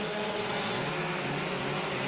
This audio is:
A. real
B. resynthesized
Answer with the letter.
A